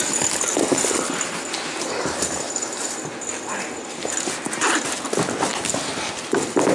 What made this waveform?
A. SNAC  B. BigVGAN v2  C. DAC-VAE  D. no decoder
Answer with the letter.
D